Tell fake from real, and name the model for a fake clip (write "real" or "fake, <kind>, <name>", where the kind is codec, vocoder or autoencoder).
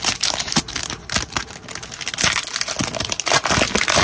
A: real